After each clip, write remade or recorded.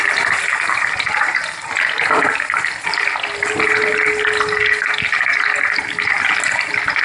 recorded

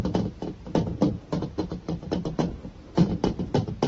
remade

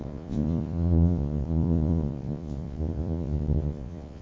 remade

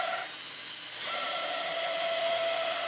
recorded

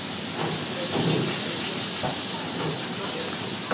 recorded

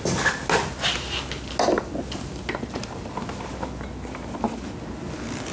recorded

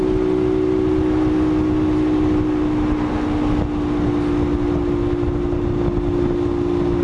recorded